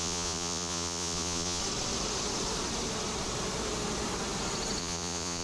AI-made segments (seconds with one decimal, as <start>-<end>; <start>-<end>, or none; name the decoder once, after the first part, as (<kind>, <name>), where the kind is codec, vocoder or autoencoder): 0.0-1.6 (vocoder, Vocos); 4.8-5.4